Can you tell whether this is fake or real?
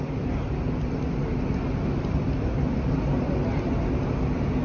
real